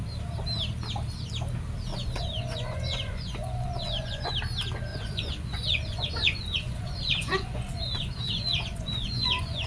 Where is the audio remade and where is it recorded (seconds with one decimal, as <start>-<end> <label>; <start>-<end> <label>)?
0.0-1.9 recorded; 1.9-4.3 remade; 4.3-4.9 recorded; 4.9-9.7 remade